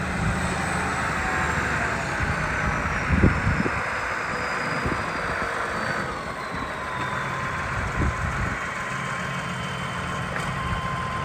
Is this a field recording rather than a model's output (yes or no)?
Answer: yes